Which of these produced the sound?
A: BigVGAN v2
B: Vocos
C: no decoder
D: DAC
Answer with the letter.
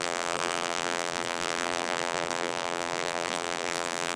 A